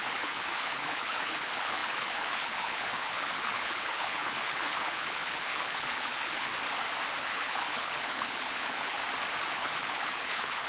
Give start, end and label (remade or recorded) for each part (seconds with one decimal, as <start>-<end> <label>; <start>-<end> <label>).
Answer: 0.0-6.5 remade; 6.5-7.2 recorded; 7.2-9.0 remade; 9.0-9.5 recorded; 9.5-10.7 remade